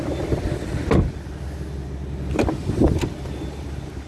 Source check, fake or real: real